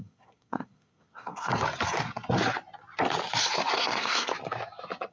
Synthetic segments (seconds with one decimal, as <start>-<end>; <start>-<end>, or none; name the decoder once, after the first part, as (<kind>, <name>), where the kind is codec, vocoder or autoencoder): 0.0-1.5 (codec, SNAC); 3.7-4.3